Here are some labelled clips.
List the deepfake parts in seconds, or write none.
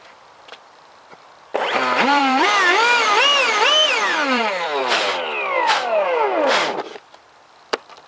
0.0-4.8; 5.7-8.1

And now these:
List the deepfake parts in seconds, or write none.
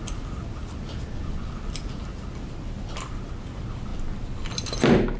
none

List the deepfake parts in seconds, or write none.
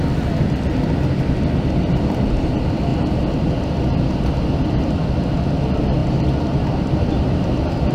0.0-2.9; 3.4-6.0; 6.9-7.9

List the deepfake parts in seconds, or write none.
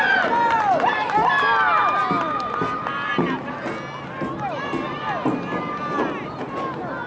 none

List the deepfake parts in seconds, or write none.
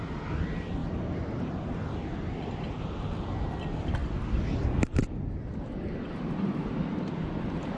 none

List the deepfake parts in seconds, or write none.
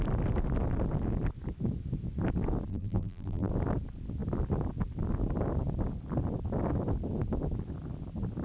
2.7-3.5